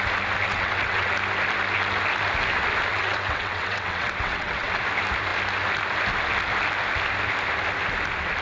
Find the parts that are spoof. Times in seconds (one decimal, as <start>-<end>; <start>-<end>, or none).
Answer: 0.4-1.1; 2.9-4.8